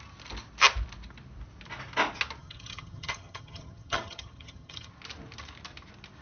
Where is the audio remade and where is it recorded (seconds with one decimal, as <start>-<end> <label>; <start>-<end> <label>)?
0.0-2.4 recorded; 2.4-4.9 remade; 4.9-6.2 recorded